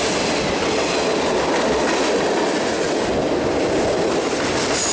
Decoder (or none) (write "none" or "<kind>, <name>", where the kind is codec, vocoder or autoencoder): none